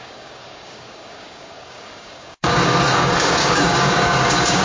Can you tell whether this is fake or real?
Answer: fake